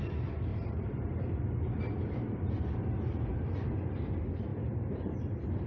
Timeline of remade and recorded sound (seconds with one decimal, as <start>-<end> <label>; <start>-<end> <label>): 0.0-0.5 recorded; 0.5-3.9 remade; 3.9-5.7 recorded